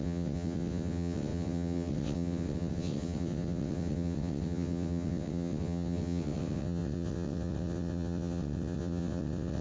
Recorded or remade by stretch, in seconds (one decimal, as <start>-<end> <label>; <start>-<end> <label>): 0.0-9.6 remade